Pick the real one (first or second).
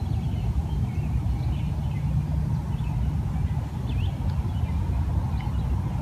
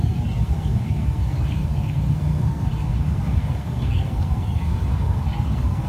first